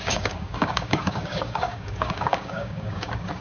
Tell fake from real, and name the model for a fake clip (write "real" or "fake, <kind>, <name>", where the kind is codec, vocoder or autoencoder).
fake, codec, DAC